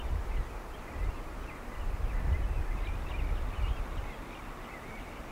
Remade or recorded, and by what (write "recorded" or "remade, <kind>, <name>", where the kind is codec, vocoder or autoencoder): recorded